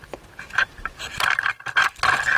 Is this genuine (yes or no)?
no